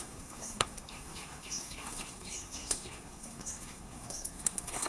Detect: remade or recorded remade